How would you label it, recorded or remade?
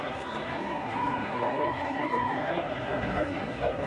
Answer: remade